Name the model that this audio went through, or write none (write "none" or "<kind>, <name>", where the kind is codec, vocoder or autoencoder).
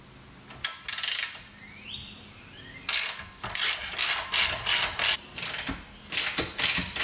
none